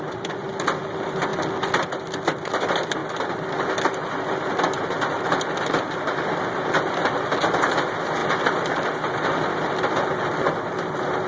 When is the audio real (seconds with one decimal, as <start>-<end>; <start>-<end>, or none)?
0.0-11.3